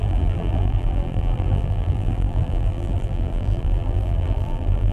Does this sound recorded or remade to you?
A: remade